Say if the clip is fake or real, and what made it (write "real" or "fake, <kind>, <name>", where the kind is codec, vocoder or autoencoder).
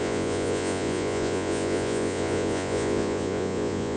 fake, vocoder, Vocos